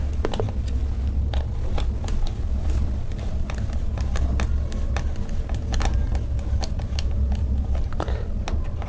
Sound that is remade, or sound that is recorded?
recorded